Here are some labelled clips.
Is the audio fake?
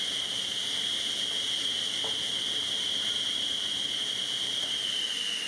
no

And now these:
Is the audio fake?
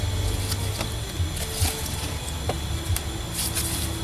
no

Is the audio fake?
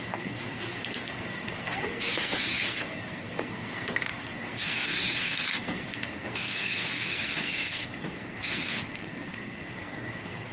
yes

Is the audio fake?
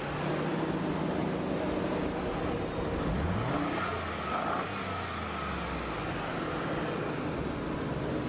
no